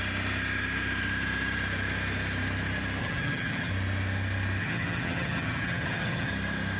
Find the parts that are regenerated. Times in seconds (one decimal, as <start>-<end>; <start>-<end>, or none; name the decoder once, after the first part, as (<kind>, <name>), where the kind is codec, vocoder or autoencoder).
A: 3.0-3.7 (vocoder, HiFi-GAN); 4.6-6.3